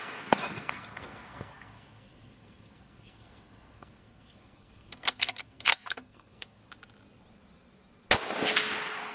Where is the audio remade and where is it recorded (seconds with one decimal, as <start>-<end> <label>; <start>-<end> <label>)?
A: 0.0-6.6 remade; 6.6-9.1 recorded